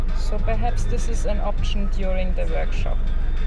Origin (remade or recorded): recorded